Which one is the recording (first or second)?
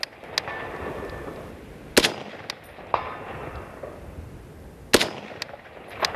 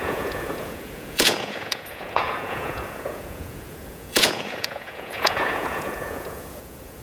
first